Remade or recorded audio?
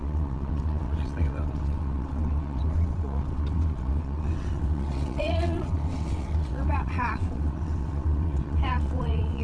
remade